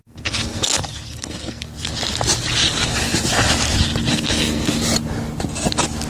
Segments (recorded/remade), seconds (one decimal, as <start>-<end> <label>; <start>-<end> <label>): 0.0-1.9 remade; 1.9-4.1 recorded; 4.1-4.7 remade; 4.7-6.1 recorded